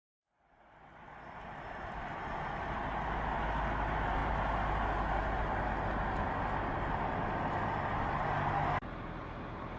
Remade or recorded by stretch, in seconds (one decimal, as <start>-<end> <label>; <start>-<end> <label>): 0.0-9.8 recorded